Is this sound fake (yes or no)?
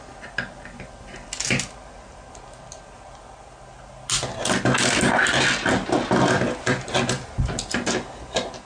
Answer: no